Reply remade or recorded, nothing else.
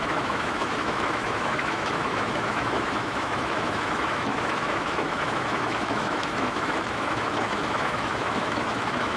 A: remade